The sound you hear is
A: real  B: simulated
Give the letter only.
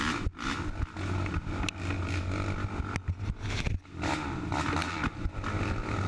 A